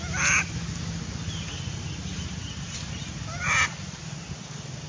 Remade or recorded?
recorded